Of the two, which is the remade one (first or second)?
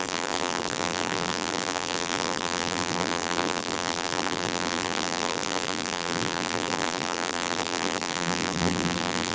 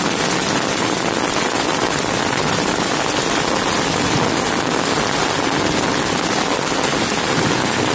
first